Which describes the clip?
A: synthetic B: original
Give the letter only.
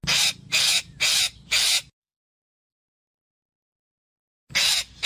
B